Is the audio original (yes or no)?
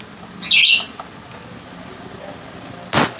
yes